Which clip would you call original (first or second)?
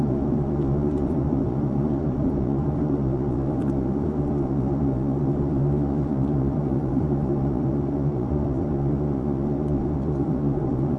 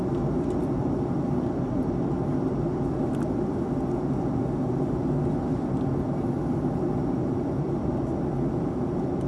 second